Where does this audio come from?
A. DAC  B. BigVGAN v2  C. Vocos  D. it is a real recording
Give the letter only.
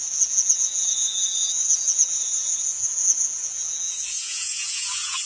C